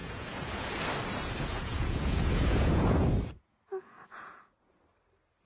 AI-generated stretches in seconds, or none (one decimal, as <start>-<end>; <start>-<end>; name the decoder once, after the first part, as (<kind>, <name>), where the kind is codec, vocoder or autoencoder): 0.0-0.8 (vocoder, Vocos); 1.5-4.8